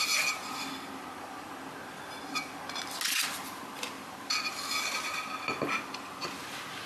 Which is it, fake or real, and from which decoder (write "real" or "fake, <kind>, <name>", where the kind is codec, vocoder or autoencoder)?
real